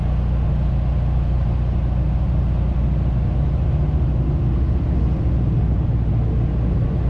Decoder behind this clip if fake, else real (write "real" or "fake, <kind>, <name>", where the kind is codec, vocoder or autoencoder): real